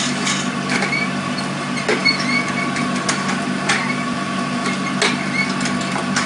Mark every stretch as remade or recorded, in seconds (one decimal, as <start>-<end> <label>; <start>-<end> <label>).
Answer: 0.0-6.3 recorded

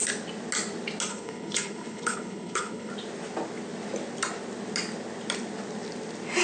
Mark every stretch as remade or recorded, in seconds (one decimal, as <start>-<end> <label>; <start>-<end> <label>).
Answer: 0.0-1.1 recorded; 1.1-2.9 remade; 2.9-6.4 recorded

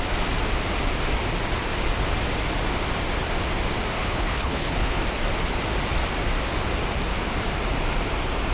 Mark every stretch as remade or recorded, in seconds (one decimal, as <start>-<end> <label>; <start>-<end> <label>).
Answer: 0.0-4.0 recorded; 4.0-5.0 remade; 5.0-8.5 recorded

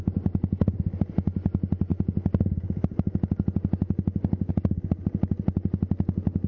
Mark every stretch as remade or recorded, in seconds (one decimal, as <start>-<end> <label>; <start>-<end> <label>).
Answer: 0.0-6.5 recorded

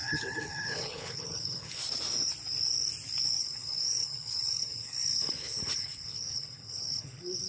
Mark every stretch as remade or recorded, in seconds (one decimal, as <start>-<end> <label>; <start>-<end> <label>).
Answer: 0.0-1.8 remade; 1.8-3.4 recorded; 3.4-7.5 remade

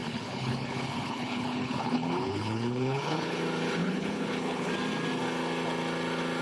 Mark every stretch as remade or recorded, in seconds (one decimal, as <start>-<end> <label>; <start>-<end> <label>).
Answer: 0.0-3.4 remade; 3.4-3.8 recorded; 3.8-4.7 remade; 4.7-6.4 recorded

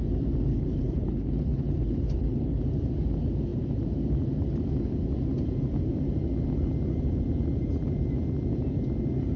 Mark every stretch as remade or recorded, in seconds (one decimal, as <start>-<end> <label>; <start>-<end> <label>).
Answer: 0.0-0.5 recorded; 0.5-2.6 remade; 2.6-9.4 recorded

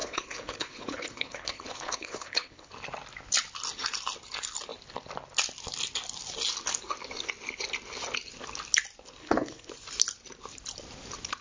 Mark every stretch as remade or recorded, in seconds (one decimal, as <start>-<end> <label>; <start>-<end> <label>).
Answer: 0.0-2.7 remade; 2.7-9.2 recorded; 9.2-9.7 remade; 9.7-11.4 recorded